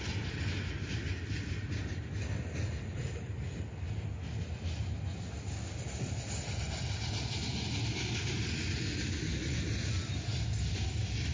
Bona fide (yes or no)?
yes